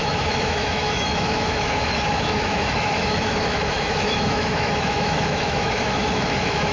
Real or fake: fake